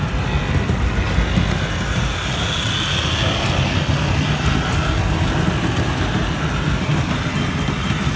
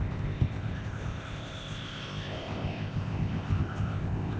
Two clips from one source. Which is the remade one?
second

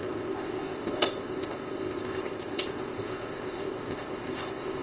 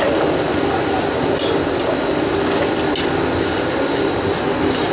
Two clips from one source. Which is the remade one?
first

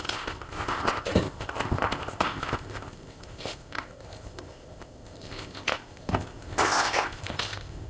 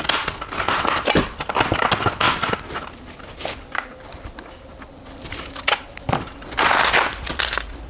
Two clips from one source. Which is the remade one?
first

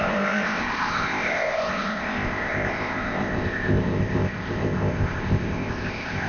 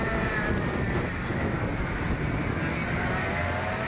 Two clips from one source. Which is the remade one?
first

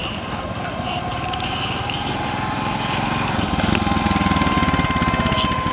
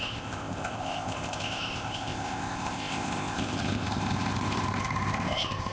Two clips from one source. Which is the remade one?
second